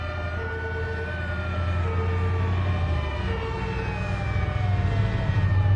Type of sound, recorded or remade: recorded